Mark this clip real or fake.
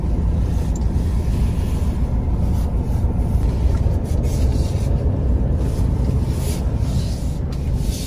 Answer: real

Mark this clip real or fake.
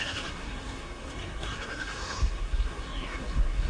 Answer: fake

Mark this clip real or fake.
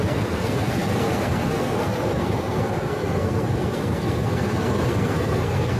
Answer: fake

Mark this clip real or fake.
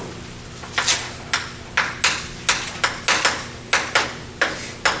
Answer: real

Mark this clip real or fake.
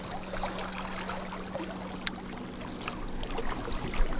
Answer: real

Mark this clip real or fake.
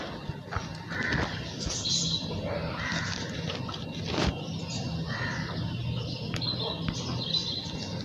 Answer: real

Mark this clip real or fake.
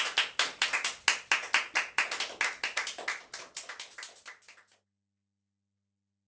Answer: real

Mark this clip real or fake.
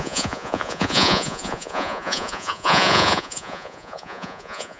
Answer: fake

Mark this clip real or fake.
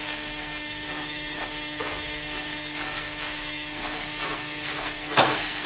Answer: fake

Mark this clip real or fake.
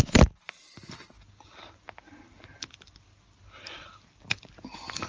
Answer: real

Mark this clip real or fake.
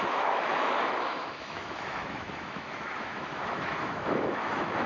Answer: fake